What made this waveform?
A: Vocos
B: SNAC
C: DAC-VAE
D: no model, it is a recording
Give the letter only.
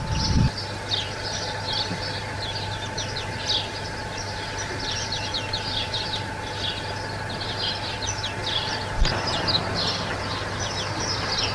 D